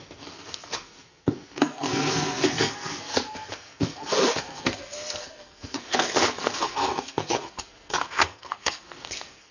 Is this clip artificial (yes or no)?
yes